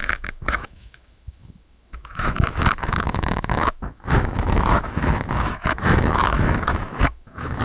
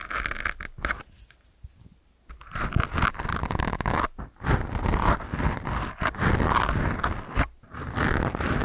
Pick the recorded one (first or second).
second